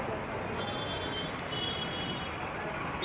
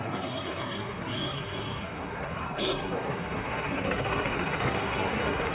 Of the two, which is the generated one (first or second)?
second